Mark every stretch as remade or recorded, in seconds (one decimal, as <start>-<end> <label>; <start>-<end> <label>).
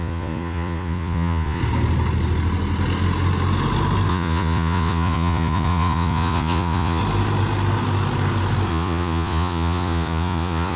0.0-1.6 remade; 1.6-4.1 recorded; 4.1-7.0 remade; 7.0-8.7 recorded; 8.7-10.8 remade